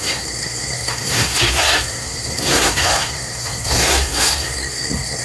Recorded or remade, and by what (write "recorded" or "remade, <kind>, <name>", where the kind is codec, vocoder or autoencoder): remade, codec, SNAC